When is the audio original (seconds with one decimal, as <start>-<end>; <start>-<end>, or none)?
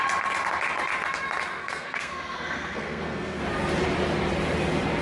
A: 0.0-1.6; 3.4-5.0